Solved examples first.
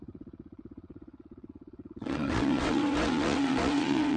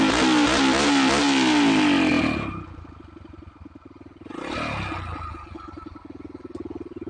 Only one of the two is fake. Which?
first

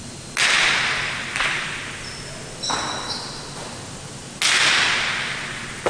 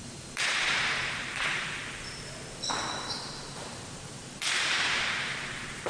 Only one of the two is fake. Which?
second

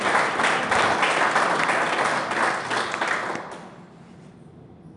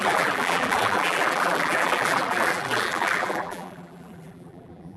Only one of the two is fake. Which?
second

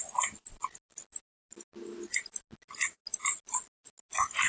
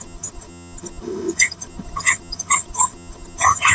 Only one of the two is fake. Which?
second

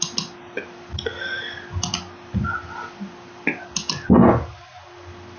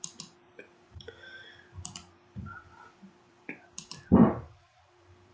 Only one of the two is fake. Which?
second